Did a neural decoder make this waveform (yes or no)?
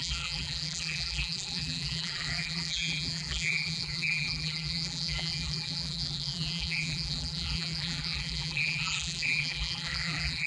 yes